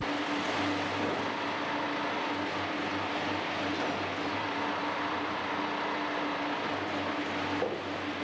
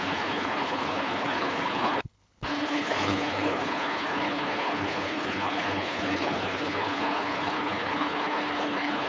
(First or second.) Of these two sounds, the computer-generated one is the second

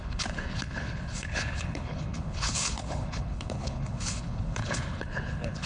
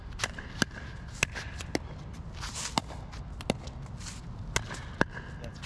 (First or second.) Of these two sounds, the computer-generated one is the first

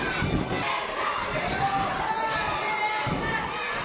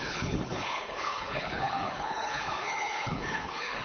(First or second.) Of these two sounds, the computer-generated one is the second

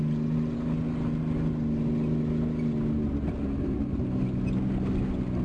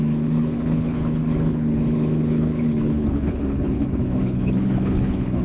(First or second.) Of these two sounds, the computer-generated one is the second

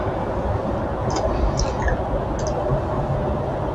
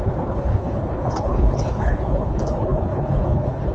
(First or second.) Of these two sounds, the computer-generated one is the second